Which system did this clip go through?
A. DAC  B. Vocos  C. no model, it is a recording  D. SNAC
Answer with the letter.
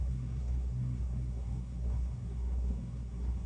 D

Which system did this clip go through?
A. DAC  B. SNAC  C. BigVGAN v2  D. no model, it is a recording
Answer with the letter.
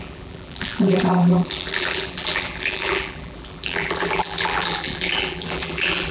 C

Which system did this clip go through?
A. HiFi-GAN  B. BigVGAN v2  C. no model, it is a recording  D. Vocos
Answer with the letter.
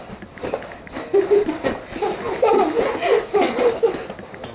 C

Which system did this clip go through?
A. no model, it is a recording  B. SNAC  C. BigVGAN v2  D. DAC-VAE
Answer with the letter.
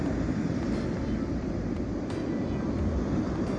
A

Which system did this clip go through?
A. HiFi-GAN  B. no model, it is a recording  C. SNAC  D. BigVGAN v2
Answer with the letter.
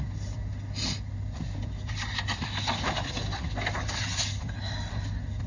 B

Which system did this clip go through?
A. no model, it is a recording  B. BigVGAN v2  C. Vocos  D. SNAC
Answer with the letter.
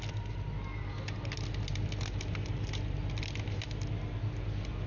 A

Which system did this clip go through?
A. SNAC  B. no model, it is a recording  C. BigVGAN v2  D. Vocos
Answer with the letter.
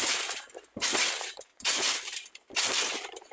C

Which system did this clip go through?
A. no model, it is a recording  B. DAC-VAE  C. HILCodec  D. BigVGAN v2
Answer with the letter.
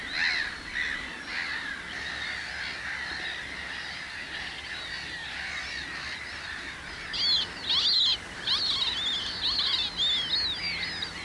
A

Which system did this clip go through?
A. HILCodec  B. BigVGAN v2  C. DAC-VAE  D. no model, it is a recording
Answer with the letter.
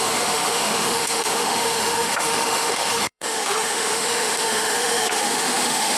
C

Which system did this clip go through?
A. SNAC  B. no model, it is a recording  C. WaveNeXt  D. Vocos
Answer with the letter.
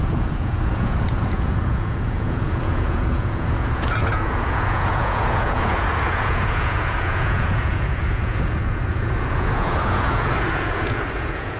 D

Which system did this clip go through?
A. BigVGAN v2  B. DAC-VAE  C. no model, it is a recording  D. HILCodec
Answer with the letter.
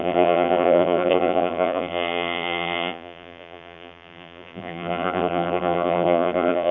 A